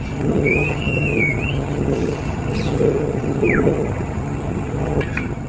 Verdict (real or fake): fake